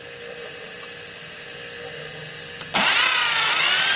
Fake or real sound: real